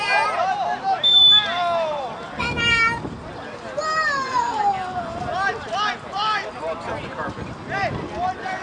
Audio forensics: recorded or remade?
recorded